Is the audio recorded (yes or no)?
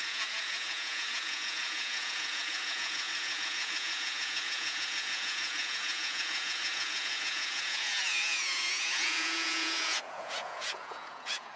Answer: no